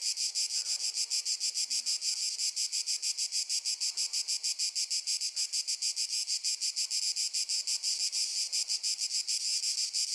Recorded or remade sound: recorded